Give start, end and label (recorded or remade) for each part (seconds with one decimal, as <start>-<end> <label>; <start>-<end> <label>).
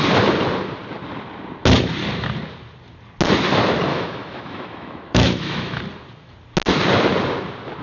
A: 0.0-3.9 recorded; 3.9-5.8 remade; 5.8-7.8 recorded